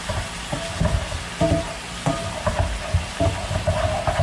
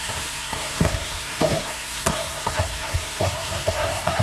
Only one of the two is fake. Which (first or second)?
second